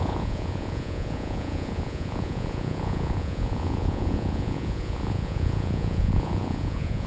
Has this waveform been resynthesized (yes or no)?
yes